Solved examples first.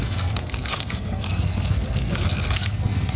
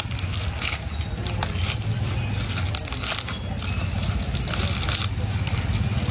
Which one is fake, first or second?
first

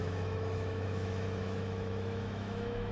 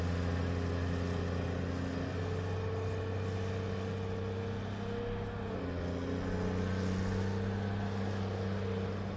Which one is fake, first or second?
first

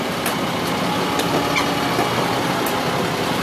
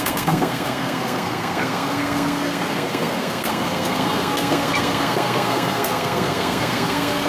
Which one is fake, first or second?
second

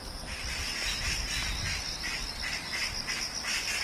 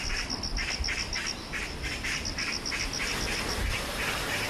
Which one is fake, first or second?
second